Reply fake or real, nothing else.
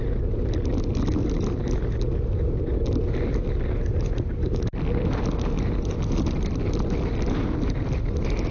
real